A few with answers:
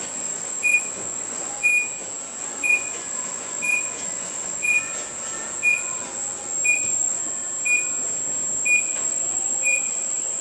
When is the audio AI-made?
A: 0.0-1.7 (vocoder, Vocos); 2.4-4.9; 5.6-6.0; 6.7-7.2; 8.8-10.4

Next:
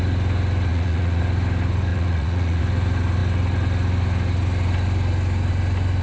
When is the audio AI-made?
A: 0.7-1.2 (vocoder, Vocos); 1.9-2.6

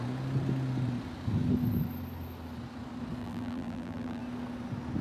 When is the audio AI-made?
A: 3.2-4.2 (vocoder, BigVGAN v2)

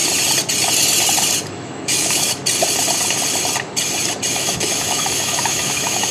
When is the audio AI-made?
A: 1.5-2.4 (autoencoder, DAC-VAE); 4.3-6.1

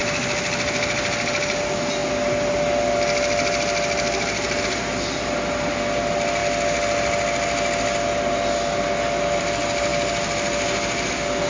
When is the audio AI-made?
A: none

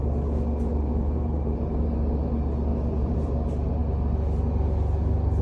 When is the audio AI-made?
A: 0.7-2.3 (vocoder, BigVGAN v2); 2.7-3.3